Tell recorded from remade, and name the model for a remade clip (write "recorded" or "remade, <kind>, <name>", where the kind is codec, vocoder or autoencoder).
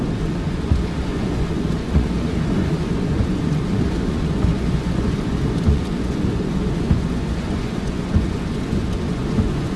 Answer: remade, vocoder, Vocos